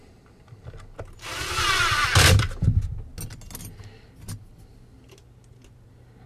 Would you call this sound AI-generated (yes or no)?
no